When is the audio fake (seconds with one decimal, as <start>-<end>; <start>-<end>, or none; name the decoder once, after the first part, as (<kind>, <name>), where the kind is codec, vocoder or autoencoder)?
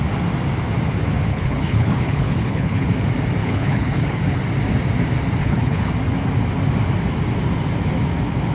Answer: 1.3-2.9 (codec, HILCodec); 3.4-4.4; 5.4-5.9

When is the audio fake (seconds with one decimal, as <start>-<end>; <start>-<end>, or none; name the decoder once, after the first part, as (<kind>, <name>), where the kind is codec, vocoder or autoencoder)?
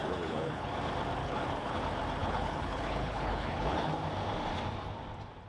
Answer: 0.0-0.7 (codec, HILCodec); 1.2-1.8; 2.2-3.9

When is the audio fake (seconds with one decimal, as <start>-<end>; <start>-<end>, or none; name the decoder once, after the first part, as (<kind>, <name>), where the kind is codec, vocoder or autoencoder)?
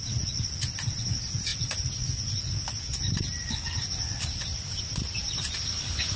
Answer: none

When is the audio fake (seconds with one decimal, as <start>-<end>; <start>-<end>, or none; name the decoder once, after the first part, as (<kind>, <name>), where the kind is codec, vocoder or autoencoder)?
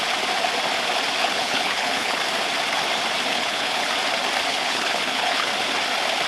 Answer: 1.2-2.2 (codec, HILCodec); 3.3-3.9; 4.5-5.5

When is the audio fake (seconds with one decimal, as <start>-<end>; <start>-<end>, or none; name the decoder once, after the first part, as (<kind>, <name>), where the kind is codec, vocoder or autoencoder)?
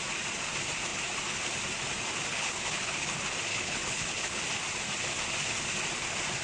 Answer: 2.3-3.1 (codec, HILCodec); 3.5-4.4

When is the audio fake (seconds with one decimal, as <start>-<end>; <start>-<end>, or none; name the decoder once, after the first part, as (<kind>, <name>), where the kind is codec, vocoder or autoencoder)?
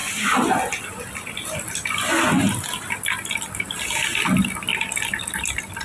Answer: none